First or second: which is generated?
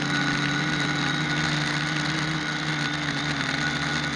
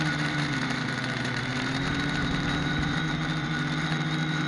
second